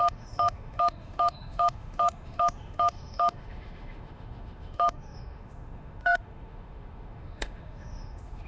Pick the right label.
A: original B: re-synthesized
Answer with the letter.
B